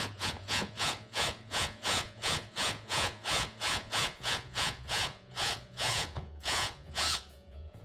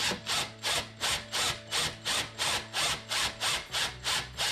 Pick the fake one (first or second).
first